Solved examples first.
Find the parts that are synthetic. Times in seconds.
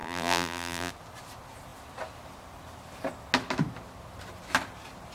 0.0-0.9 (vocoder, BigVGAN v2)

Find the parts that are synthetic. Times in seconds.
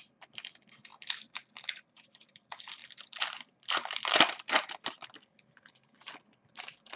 0.0-0.9 (vocoder, BigVGAN v2); 1.9-7.0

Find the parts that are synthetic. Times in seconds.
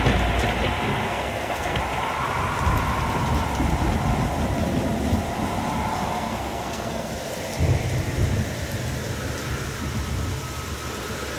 0.9-1.8 (codec, SNAC); 5.9-7.1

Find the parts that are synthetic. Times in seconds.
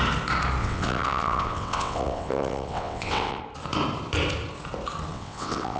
0.6-3.4 (vocoder, WaveNeXt); 5.1-5.8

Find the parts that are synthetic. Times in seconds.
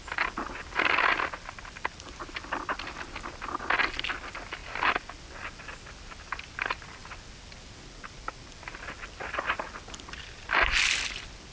none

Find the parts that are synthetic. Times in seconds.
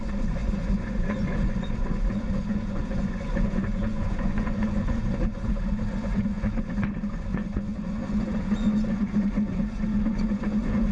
0.0-10.9 (vocoder, Vocos)